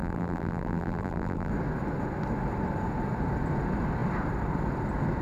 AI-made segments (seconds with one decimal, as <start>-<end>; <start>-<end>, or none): 0.0-1.5